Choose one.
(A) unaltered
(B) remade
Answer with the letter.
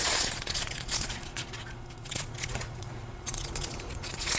B